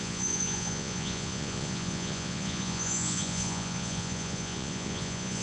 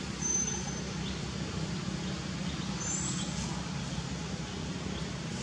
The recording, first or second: second